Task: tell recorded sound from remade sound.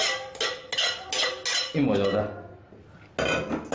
recorded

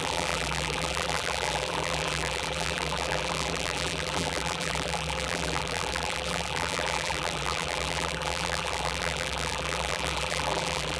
remade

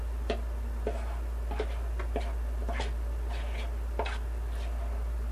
recorded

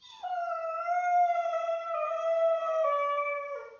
recorded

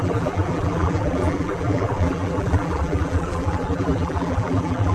remade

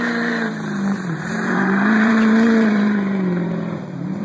remade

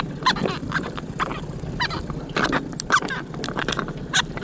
recorded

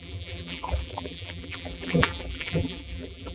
remade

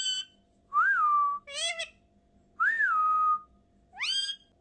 recorded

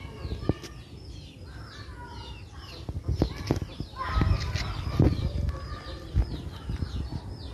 recorded